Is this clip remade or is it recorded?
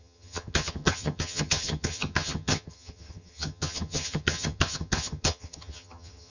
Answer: remade